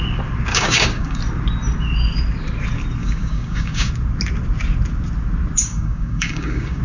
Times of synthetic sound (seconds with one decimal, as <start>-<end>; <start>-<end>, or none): 0.5-1.2; 3.0-3.9; 5.6-6.8